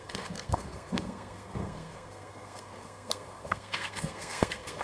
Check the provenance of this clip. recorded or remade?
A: remade